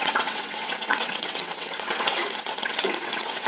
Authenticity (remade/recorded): remade